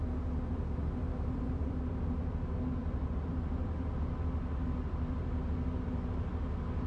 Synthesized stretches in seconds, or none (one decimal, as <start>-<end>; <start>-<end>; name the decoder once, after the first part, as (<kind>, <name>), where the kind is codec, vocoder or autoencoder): 0.8-1.7 (vocoder, BigVGAN v2); 2.8-4.1